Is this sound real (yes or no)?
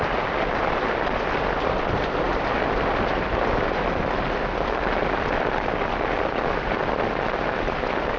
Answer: no